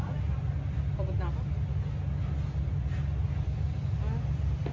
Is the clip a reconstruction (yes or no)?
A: no